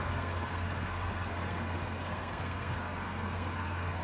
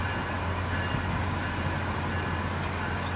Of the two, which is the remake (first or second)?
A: first